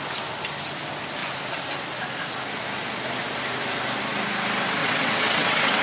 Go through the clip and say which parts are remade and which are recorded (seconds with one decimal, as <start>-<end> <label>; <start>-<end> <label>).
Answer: 0.0-4.8 recorded; 4.8-5.8 remade